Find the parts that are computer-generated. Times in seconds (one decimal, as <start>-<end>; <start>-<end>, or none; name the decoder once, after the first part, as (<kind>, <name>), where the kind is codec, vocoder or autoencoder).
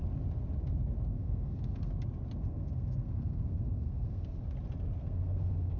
1.1-1.9 (codec, SNAC); 2.4-4.4; 5.0-5.8